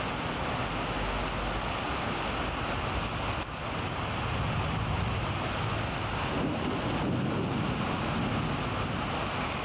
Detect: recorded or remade recorded